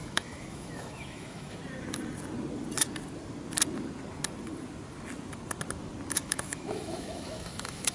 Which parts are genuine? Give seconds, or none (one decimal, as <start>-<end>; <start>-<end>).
1.6-6.1